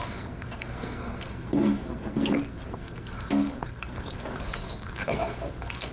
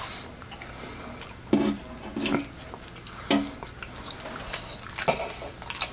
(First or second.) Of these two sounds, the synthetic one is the first